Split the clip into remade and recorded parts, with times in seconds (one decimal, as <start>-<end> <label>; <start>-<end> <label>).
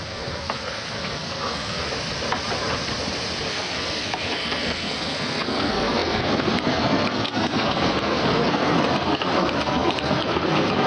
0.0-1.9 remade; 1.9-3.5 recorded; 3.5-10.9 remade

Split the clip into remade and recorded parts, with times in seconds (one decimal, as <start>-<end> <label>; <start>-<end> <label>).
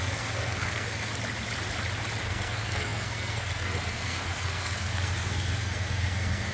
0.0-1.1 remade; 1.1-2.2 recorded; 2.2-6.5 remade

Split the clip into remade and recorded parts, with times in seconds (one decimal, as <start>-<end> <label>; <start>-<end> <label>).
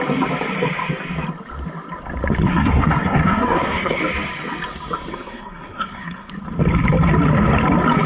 0.0-2.5 recorded; 2.5-4.0 remade; 4.0-5.1 recorded; 5.1-6.3 remade; 6.3-8.1 recorded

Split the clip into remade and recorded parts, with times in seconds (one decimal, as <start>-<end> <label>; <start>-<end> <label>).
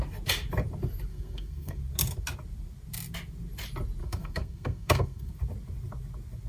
0.0-1.1 recorded; 1.1-1.8 remade; 1.8-4.0 recorded; 4.0-5.3 remade; 5.3-6.5 recorded